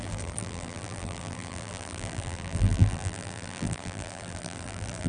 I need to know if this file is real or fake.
fake